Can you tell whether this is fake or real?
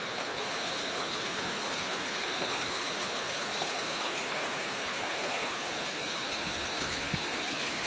fake